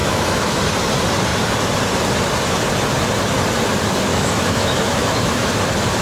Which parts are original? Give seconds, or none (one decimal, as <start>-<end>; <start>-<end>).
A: 0.6-4.1; 5.5-6.0